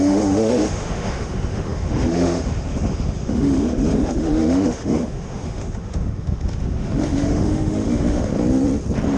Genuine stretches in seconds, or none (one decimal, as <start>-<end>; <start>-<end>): 8.3-9.2